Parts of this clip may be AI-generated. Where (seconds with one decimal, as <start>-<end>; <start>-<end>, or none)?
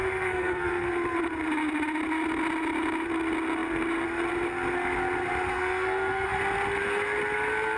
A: 0.0-0.9; 5.5-6.4